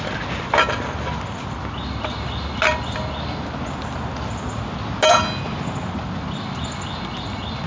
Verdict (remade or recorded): recorded